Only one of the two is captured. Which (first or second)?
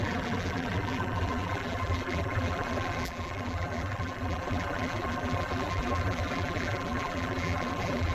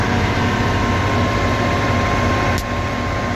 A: second